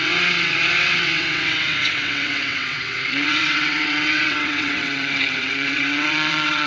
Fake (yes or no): yes